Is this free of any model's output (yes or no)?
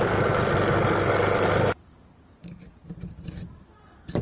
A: yes